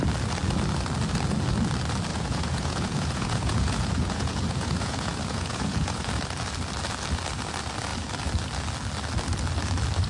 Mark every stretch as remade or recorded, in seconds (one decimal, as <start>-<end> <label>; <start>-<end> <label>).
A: 0.0-2.1 recorded; 2.1-6.1 remade; 6.1-10.1 recorded